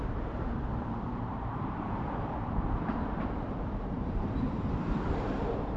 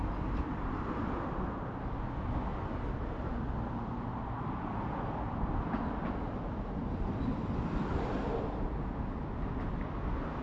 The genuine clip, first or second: second